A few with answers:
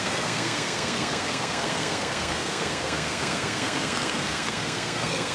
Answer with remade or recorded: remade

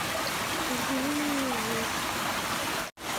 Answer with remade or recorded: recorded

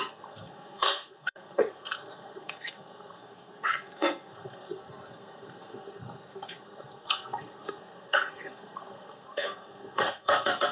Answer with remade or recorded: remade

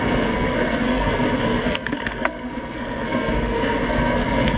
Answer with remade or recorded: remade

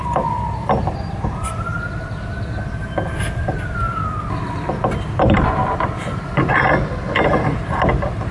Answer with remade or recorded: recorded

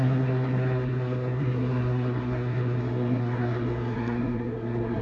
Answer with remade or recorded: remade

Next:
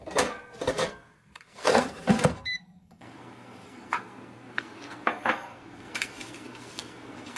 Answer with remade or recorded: remade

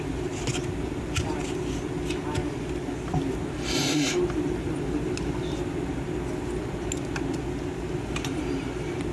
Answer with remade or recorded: recorded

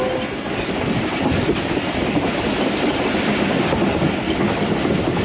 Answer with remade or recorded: recorded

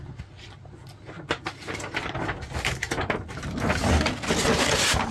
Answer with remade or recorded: recorded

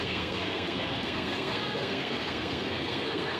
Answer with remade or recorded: remade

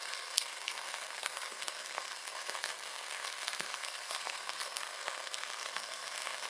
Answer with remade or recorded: remade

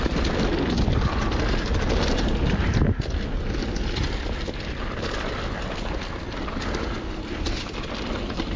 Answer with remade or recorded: recorded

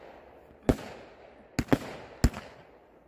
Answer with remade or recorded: recorded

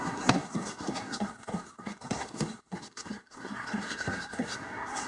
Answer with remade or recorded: remade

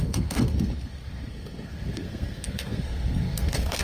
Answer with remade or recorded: remade